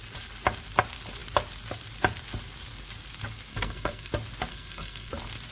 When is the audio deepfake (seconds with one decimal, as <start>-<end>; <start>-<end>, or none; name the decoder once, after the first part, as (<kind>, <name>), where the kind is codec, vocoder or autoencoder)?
3.5-4.1 (codec, SNAC); 4.5-5.1